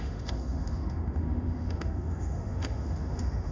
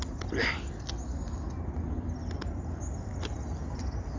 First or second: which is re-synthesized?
first